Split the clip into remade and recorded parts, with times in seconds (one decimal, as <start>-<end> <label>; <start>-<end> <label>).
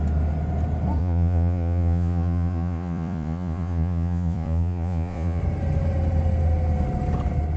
0.0-1.0 recorded; 1.0-5.4 remade; 5.4-7.6 recorded